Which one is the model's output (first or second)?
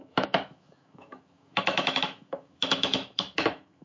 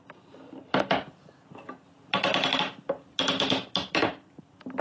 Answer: first